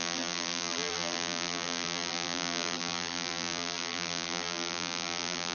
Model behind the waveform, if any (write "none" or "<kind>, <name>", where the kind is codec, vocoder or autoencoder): vocoder, BigVGAN v2